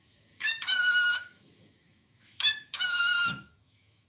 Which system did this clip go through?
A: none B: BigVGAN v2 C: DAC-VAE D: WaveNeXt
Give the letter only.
C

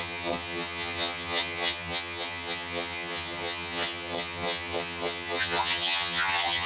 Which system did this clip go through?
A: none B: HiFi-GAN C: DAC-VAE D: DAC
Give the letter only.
B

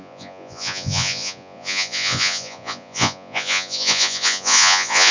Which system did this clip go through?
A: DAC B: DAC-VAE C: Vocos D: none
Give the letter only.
C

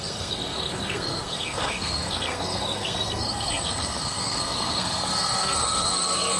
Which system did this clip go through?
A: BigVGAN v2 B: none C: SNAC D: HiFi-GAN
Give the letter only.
C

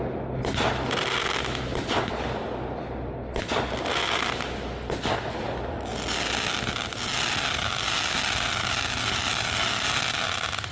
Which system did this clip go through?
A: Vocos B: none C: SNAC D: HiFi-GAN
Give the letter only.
B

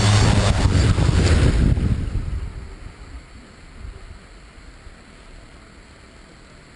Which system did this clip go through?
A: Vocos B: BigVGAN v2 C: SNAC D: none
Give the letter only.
D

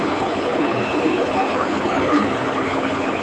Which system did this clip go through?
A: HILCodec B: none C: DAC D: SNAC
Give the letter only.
A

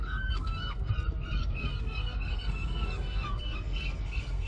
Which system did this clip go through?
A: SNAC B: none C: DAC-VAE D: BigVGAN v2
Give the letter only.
A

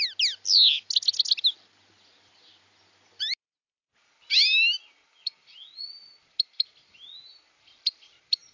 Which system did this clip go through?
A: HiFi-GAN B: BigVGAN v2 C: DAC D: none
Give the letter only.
D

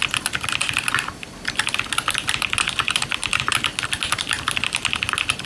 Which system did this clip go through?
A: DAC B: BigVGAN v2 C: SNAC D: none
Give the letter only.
D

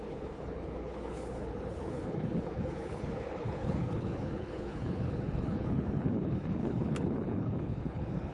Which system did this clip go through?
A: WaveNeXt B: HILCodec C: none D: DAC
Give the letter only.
B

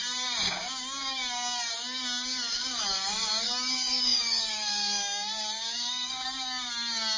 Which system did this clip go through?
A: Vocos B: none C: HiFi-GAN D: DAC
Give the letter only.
D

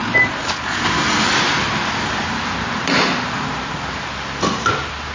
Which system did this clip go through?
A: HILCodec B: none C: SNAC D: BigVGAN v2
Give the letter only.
B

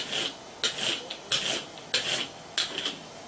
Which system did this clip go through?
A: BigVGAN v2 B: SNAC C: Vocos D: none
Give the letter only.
D